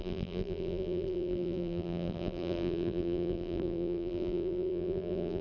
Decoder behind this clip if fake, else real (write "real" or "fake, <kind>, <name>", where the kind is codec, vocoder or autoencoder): fake, vocoder, BigVGAN v2